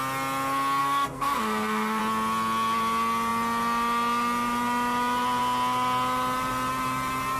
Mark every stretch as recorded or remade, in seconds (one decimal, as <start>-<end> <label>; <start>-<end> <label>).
0.0-0.8 recorded; 0.8-2.0 remade; 2.0-7.4 recorded